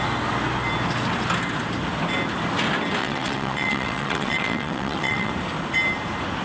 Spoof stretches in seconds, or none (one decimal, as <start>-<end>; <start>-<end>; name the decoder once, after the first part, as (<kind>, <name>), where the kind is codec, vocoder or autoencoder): 3.0-5.3 (vocoder, WaveNeXt)